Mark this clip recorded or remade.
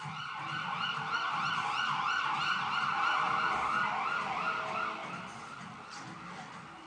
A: recorded